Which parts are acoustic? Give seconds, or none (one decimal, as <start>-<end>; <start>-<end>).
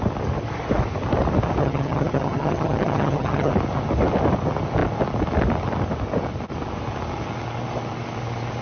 0.0-1.6; 3.5-8.6